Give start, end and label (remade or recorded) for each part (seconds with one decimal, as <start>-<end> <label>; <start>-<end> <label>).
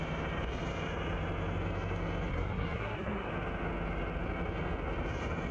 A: 0.0-2.3 recorded; 2.3-3.3 remade; 3.3-5.5 recorded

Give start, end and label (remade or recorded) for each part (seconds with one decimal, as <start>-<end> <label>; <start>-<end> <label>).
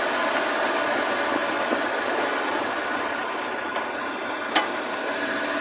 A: 0.0-5.6 recorded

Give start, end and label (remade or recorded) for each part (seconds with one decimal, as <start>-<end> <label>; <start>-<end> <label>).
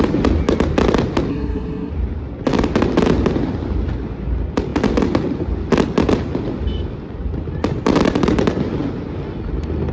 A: 0.0-1.3 recorded; 1.3-1.9 remade; 1.9-9.9 recorded